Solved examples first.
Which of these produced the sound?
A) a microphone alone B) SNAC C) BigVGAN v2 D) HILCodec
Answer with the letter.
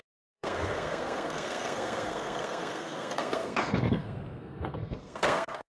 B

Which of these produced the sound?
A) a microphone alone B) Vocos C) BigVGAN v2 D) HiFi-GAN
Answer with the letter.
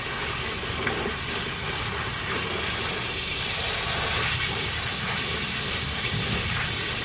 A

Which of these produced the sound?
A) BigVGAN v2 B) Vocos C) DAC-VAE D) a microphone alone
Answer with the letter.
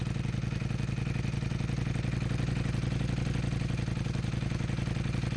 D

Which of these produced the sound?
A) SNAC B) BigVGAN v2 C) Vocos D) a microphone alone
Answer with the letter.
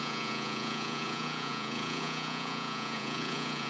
C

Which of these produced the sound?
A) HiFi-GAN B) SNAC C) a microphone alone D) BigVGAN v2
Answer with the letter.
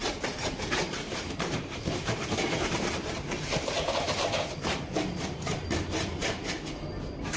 D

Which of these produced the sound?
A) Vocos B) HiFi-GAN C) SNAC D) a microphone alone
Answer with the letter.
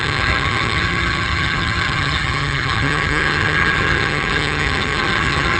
B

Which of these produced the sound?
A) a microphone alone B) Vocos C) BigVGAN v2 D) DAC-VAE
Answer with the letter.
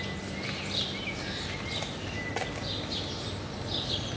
A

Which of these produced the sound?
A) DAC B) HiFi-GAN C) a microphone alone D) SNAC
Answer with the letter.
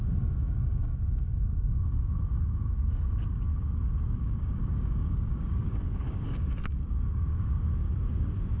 A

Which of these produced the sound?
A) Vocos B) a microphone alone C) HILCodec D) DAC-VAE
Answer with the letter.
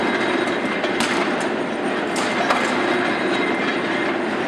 B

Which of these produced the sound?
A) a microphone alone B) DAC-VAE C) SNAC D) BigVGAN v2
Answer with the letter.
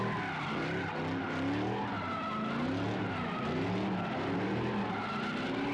A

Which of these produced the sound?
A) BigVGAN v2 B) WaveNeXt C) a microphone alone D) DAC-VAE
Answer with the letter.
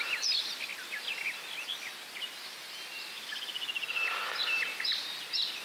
C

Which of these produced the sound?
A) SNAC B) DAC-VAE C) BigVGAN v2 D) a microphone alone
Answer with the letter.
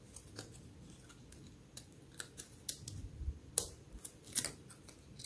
C